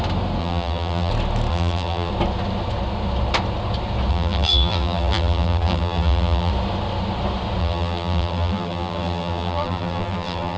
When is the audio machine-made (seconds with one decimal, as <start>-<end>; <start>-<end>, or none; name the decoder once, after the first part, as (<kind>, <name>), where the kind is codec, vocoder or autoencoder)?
0.4-1.1 (vocoder, BigVGAN v2); 1.5-2.1; 4.1-6.5; 7.6-10.6